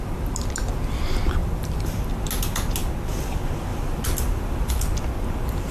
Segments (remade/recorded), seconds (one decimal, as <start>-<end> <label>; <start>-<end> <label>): 0.0-1.4 recorded; 1.4-2.0 remade; 2.0-3.7 recorded; 3.7-4.7 remade; 4.7-5.7 recorded